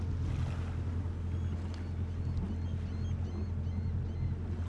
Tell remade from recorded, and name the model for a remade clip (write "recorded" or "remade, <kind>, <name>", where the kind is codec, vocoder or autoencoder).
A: recorded